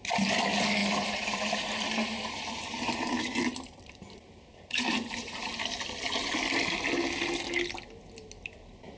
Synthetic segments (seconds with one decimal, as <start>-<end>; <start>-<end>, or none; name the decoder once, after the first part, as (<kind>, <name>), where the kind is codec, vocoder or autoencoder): 0.8-5.6 (vocoder, BigVGAN v2)